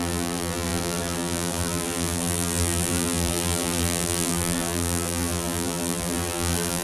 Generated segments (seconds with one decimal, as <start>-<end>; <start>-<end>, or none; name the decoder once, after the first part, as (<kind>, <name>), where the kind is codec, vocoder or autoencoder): 0.0-6.8 (vocoder, BigVGAN v2)